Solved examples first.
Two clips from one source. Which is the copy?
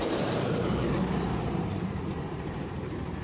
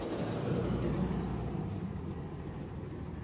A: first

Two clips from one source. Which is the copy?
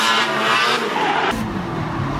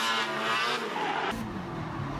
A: first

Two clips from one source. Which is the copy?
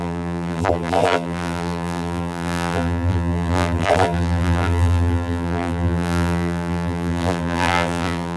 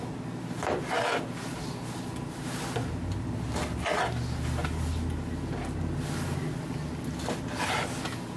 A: first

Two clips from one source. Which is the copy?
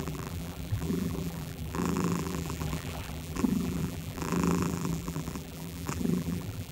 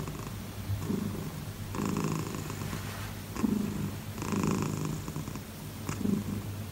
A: first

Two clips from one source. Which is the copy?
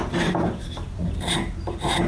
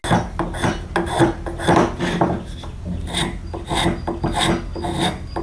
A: first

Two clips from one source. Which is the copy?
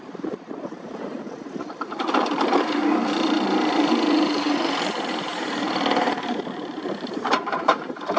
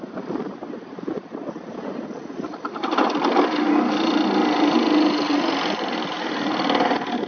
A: first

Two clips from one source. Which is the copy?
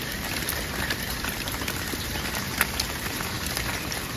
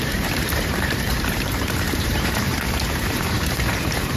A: second